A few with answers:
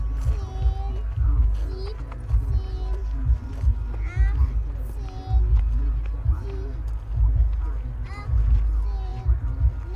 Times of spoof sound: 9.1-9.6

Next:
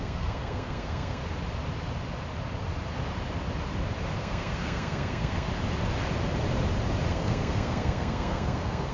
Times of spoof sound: 0.0-1.2; 4.2-5.5; 7.1-8.9

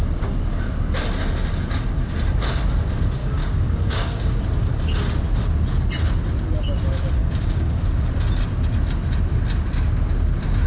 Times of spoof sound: 3.2-4.4; 7.2-7.8

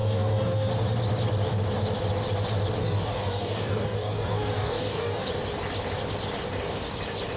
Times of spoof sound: 0.0-0.7; 2.8-5.3

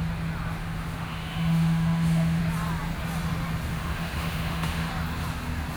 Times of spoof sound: 0.6-2.4; 3.7-4.9